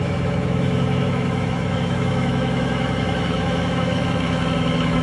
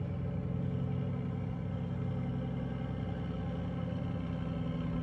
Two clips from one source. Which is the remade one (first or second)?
first